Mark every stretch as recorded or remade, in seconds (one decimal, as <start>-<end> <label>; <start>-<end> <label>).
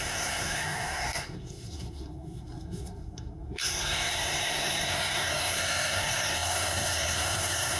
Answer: 0.0-7.8 remade